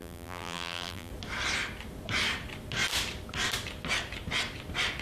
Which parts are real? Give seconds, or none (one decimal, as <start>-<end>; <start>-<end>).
1.1-5.0